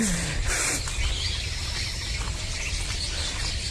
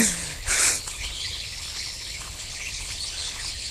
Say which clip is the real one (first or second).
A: first